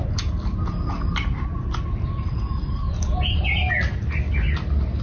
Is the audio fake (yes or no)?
no